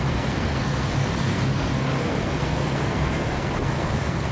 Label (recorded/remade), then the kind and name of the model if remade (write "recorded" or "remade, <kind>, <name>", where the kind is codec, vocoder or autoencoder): remade, codec, SNAC